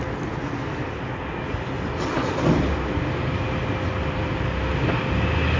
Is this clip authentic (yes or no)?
yes